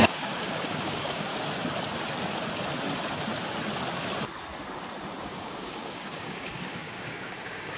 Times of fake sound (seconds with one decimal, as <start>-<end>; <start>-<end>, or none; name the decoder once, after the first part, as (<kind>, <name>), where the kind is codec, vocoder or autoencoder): 0.0-1.3 (codec, DAC); 5.2-7.8